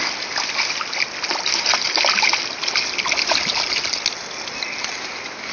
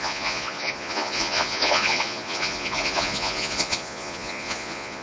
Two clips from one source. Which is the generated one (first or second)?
second